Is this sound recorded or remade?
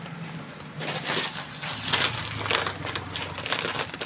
recorded